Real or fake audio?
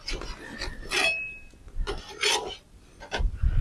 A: real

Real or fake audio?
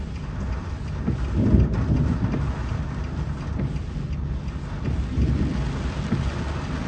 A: real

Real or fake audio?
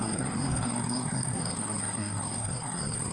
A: fake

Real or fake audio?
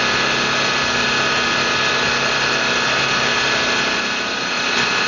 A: real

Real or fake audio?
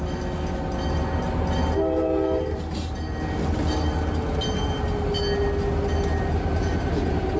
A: real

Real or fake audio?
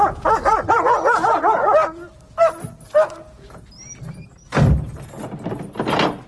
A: real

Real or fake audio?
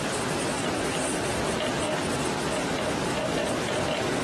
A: real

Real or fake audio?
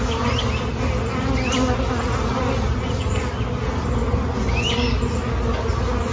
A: real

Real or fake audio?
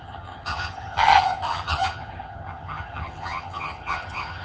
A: fake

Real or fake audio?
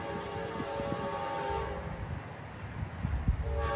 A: real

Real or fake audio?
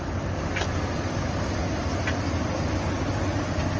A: real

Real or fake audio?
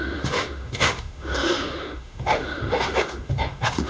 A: fake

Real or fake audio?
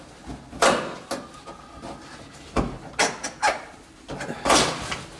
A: real